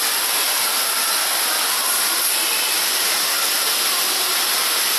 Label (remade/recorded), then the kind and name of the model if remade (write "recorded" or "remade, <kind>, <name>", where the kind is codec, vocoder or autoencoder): recorded